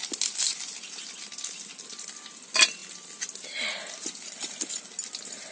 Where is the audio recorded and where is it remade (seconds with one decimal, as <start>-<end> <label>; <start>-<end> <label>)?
0.0-5.5 recorded